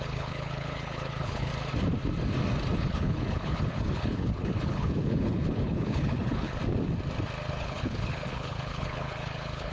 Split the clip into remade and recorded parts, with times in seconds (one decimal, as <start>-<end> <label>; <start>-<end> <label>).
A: 0.0-1.5 remade; 1.5-2.8 recorded; 2.8-6.6 remade; 6.6-7.6 recorded; 7.6-9.7 remade